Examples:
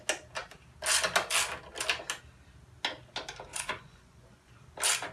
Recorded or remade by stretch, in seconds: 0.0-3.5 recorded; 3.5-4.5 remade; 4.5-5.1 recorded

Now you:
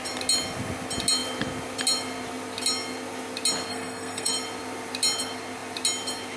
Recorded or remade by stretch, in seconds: 0.0-3.7 recorded; 3.7-4.3 remade; 4.3-6.4 recorded

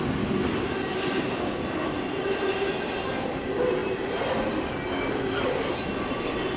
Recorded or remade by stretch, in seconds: 0.0-6.6 recorded

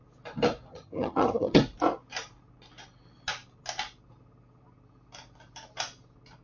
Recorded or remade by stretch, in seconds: 0.0-0.7 recorded; 0.7-1.6 remade; 1.6-6.4 recorded

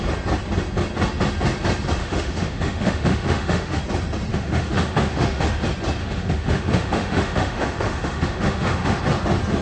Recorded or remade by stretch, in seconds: 0.0-2.0 recorded; 2.0-3.8 remade; 3.8-4.3 recorded; 4.3-5.6 remade; 5.6-6.0 recorded; 6.0-9.0 remade; 9.0-9.6 recorded

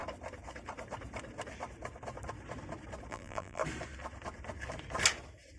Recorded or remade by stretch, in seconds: 0.0-3.1 recorded; 3.1-3.6 remade; 3.6-5.6 recorded